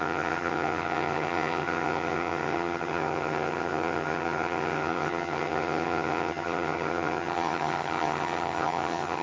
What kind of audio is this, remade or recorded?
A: remade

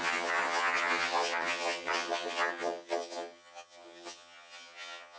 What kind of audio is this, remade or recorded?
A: remade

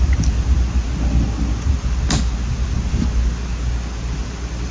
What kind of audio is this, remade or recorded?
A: recorded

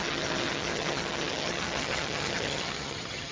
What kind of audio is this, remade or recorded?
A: remade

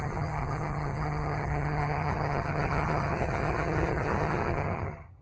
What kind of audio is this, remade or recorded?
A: remade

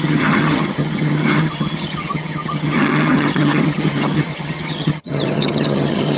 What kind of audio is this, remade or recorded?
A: remade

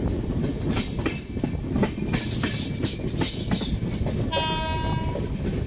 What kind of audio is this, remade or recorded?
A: recorded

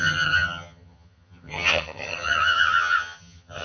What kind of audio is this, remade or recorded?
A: remade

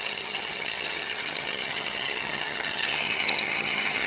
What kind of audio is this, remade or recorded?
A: remade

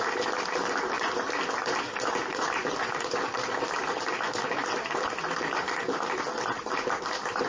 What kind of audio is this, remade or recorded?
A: recorded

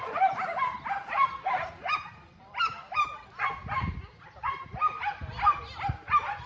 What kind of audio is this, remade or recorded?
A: recorded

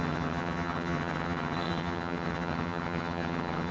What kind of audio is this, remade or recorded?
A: remade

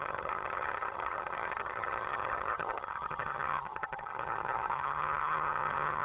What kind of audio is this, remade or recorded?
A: remade